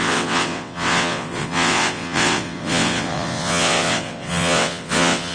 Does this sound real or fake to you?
fake